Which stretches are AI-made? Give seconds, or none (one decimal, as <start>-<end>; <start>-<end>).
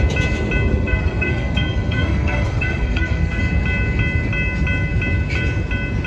0.7-3.4